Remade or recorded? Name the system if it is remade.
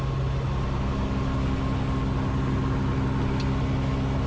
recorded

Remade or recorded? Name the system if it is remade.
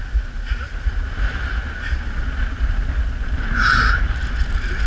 recorded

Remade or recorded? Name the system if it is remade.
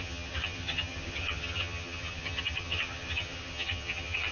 remade, vocoder, HiFi-GAN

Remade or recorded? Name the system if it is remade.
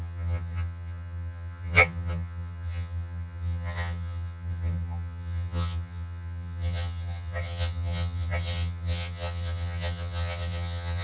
remade, vocoder, HiFi-GAN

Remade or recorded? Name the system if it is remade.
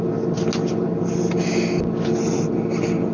recorded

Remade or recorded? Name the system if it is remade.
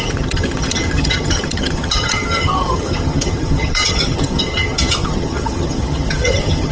remade, vocoder, HiFi-GAN